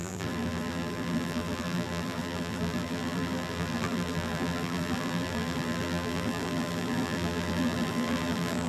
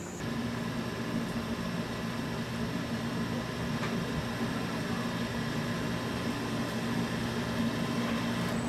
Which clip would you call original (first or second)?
second